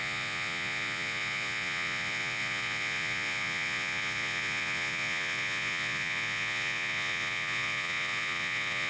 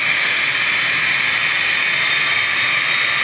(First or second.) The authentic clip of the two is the second